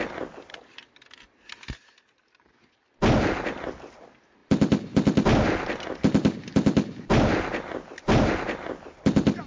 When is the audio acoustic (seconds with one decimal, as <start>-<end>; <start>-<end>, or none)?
0.0-9.5